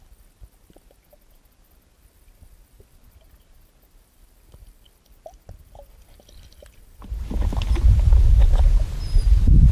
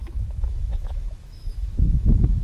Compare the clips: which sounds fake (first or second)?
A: second